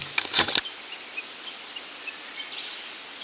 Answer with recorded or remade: recorded